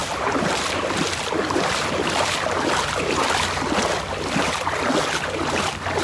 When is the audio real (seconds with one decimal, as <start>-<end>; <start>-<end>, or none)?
0.0-6.0